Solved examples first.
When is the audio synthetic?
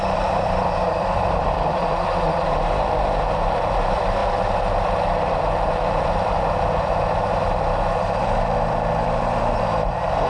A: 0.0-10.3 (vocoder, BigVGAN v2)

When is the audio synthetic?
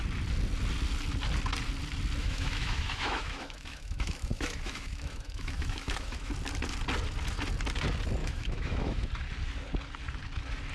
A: 2.2-6.3 (autoencoder, DAC-VAE); 8.2-9.1